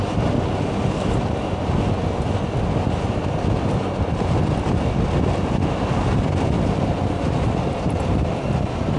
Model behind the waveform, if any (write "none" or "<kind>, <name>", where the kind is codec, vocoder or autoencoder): none